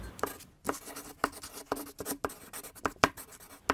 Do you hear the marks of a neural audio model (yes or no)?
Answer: no